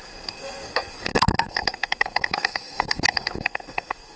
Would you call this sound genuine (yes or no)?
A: no